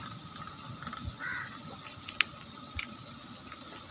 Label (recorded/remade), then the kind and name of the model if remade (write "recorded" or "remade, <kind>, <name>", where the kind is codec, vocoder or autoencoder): recorded